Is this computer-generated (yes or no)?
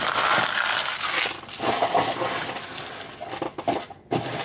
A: no